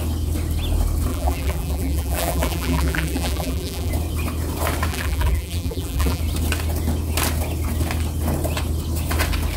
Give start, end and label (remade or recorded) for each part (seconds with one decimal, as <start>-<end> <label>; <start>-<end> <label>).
0.0-1.1 recorded; 1.1-3.9 remade; 3.9-4.9 recorded; 4.9-6.2 remade; 6.2-9.6 recorded

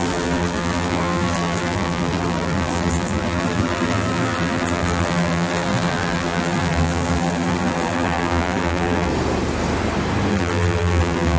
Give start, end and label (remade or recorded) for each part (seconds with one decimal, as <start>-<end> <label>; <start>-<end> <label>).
0.0-9.1 remade; 9.1-10.3 recorded; 10.3-11.4 remade

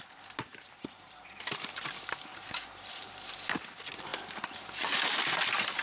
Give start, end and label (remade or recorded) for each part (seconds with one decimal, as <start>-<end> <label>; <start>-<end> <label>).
0.0-0.5 recorded; 0.5-1.4 remade; 1.4-2.3 recorded; 2.3-3.1 remade; 3.1-5.8 recorded

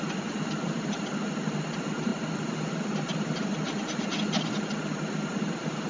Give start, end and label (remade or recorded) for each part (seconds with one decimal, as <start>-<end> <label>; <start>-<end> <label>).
0.0-5.9 recorded